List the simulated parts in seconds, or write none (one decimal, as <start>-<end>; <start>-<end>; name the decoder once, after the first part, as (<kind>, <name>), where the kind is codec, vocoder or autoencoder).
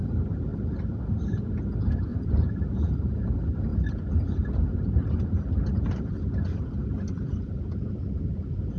0.5-1.5 (vocoder, BigVGAN v2); 2.1-2.7